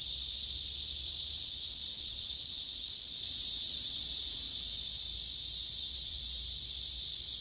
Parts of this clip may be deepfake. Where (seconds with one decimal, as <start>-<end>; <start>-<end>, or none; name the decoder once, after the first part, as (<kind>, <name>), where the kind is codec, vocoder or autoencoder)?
1.9-2.5 (vocoder, WaveNeXt); 3.6-4.3; 5.8-6.4